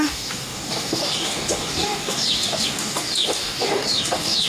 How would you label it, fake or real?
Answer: fake